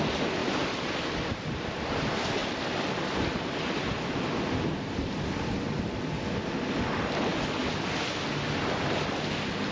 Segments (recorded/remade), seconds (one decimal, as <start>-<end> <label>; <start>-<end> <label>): 0.0-0.4 recorded; 0.4-1.9 remade; 1.9-2.4 recorded; 2.4-6.1 remade; 6.1-7.6 recorded; 7.6-8.1 remade; 8.1-9.7 recorded